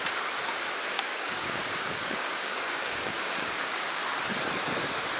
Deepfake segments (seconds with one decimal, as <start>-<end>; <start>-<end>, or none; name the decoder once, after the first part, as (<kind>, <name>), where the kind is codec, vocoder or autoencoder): 0.9-4.0 (codec, DAC)